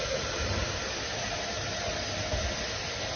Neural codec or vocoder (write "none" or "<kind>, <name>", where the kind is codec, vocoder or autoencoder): none